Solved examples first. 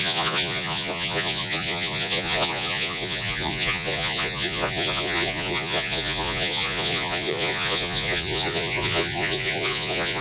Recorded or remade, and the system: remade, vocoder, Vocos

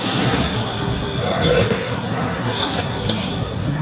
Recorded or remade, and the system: remade, codec, SNAC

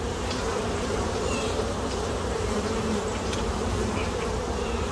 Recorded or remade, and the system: remade, vocoder, BigVGAN v2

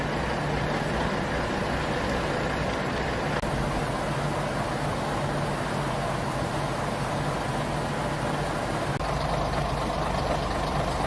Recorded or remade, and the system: recorded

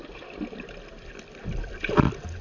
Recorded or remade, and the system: recorded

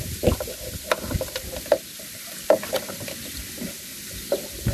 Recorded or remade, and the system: recorded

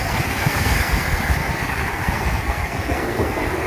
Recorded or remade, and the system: remade, codec, SNAC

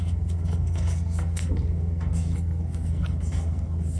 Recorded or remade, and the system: remade, codec, SNAC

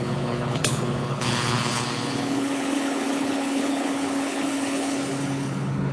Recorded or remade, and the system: remade, codec, HILCodec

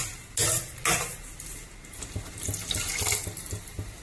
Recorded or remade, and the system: recorded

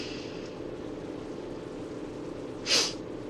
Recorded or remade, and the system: recorded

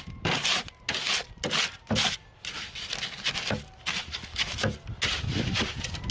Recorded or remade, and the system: recorded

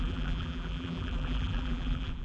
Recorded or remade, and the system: remade, vocoder, BigVGAN v2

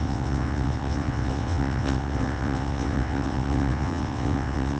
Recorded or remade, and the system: remade, vocoder, WaveNeXt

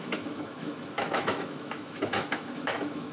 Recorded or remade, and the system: remade, autoencoder, DAC-VAE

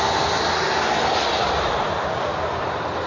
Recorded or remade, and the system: recorded